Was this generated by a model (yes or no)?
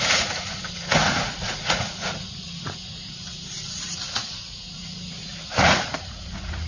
yes